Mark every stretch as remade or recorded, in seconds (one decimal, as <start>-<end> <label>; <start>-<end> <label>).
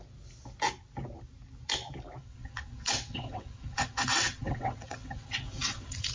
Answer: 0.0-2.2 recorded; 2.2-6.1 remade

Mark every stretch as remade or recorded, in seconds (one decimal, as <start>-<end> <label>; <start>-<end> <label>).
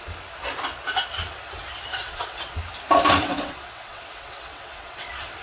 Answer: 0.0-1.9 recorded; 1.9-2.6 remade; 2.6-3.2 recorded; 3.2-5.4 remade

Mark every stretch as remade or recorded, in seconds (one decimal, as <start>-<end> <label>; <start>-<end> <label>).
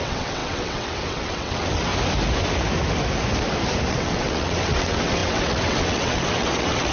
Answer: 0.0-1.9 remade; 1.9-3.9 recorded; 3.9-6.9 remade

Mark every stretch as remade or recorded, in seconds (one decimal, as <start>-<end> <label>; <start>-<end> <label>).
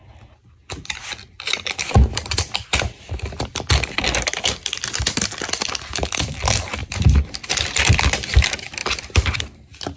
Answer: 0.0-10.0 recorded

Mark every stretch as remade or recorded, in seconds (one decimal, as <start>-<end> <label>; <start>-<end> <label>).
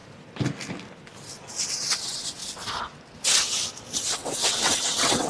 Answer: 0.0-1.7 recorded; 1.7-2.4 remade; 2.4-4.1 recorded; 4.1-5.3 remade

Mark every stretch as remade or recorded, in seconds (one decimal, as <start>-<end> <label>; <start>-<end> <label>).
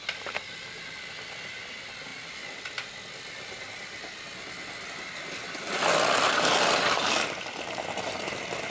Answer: 0.0-8.7 recorded